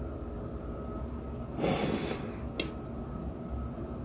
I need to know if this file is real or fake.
real